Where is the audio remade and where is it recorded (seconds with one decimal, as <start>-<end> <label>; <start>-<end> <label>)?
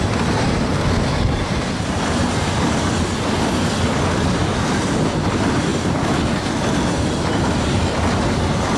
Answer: 0.0-8.8 recorded